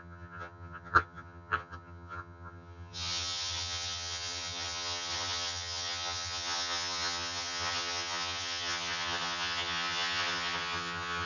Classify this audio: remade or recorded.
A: remade